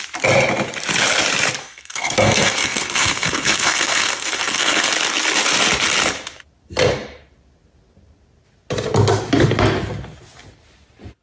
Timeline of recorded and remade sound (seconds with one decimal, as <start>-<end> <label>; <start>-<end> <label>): 0.0-1.6 recorded; 1.6-4.9 remade; 4.9-11.2 recorded